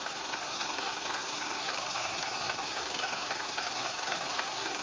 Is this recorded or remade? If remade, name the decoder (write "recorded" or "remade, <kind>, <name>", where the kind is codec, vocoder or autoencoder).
remade, codec, SNAC